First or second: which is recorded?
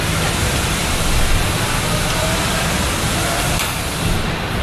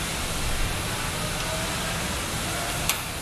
second